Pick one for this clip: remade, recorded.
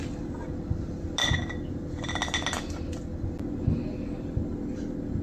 recorded